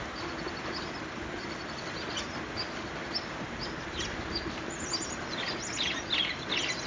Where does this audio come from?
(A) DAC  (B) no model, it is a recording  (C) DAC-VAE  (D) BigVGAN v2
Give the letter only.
B